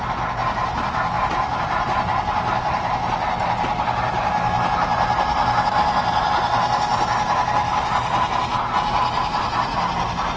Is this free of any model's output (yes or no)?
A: yes